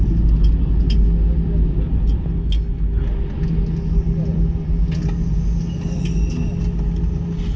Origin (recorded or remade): recorded